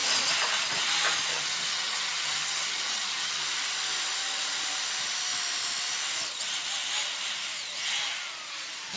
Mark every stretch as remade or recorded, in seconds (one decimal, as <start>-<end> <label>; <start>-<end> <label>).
0.0-1.3 recorded; 1.3-3.4 remade; 3.4-9.0 recorded